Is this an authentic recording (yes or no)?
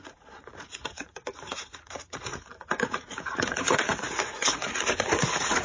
no